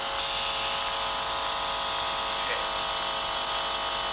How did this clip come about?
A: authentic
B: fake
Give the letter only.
A